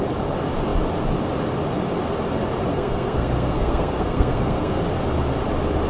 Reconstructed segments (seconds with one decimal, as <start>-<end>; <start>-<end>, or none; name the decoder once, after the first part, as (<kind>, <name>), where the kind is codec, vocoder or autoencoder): 2.7-4.8 (codec, SNAC)